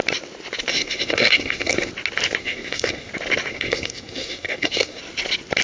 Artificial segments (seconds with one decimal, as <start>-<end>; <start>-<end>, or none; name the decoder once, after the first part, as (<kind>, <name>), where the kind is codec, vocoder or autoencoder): 0.7-1.9 (codec, SNAC); 2.4-3.1; 3.5-5.0